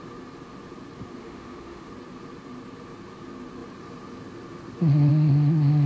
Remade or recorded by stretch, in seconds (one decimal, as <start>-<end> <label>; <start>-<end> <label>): 0.0-1.2 recorded; 1.2-1.9 remade; 1.9-5.9 recorded